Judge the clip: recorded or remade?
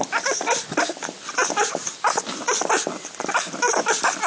recorded